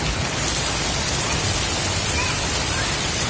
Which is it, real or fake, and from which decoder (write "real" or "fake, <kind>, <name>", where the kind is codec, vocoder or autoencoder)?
real